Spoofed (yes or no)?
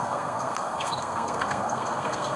yes